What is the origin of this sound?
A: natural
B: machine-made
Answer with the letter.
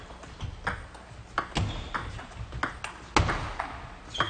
A